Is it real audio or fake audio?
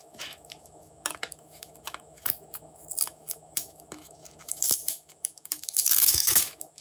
fake